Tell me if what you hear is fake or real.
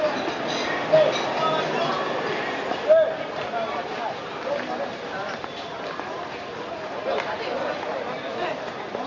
real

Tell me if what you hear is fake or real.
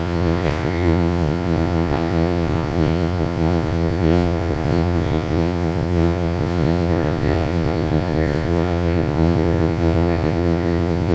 fake